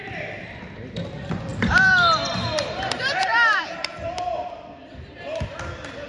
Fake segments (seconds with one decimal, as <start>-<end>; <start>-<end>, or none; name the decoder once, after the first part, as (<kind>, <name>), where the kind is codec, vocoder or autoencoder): 0.0-0.6 (vocoder, BigVGAN v2); 1.5-5.1